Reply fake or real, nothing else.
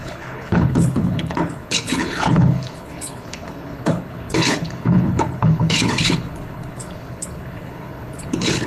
fake